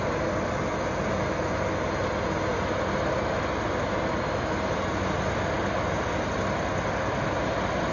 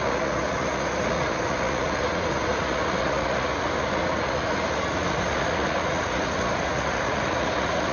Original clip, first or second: first